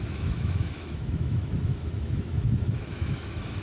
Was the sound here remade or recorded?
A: remade